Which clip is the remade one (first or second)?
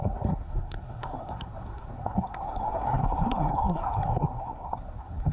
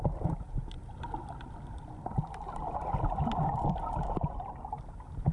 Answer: first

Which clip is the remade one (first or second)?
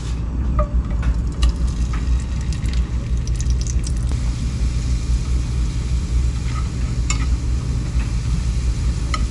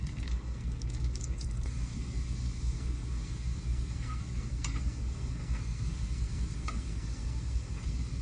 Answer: second